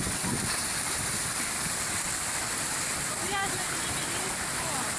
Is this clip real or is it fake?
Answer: real